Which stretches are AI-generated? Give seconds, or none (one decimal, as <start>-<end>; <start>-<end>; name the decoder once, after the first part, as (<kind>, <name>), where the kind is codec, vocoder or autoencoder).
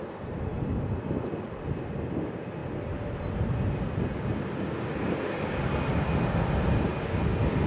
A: none